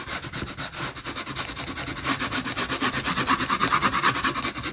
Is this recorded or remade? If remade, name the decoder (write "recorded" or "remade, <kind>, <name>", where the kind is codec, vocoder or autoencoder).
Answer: recorded